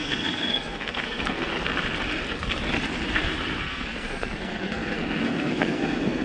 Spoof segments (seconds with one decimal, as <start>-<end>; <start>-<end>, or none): 0.0-1.5; 3.6-6.2